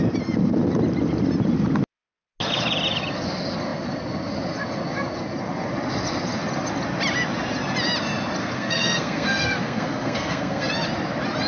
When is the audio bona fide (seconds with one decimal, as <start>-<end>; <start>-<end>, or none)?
0.0-8.4; 10.7-11.5